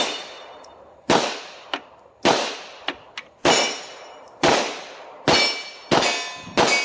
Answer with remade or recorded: recorded